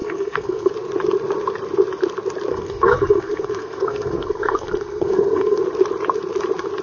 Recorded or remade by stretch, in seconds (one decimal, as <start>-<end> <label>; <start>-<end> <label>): 0.0-0.7 remade; 0.7-2.5 recorded; 2.5-5.6 remade; 5.6-6.8 recorded